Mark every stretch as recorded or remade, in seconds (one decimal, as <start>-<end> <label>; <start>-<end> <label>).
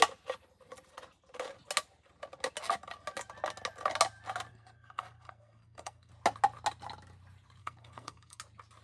0.0-4.5 recorded; 4.5-6.1 remade; 6.1-7.6 recorded; 7.6-8.4 remade; 8.4-8.8 recorded